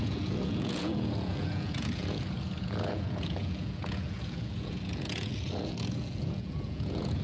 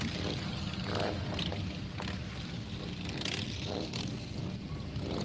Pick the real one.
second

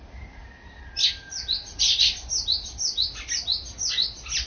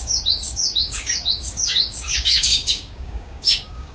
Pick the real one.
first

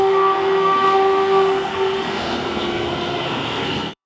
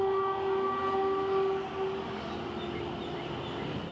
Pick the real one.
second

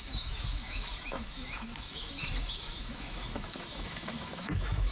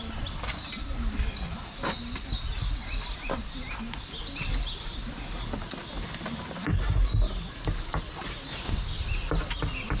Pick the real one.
second